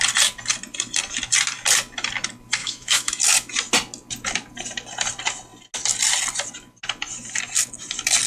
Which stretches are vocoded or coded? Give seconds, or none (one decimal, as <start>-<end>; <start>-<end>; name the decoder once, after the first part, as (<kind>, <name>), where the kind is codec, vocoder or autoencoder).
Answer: 2.6-3.2 (autoencoder, DAC-VAE)